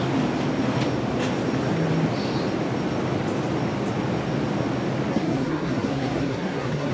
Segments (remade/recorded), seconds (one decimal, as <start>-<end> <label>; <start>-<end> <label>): 0.0-5.1 recorded; 5.1-6.9 remade